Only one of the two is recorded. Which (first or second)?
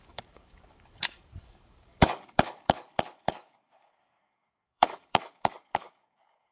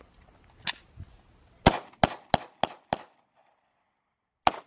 second